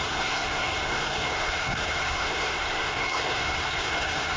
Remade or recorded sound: remade